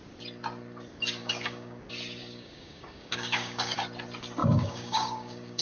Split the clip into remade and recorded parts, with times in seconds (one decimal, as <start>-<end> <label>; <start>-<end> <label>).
0.0-1.2 recorded; 1.2-1.8 remade; 1.8-2.2 recorded; 2.2-3.8 remade; 3.8-4.4 recorded; 4.4-5.6 remade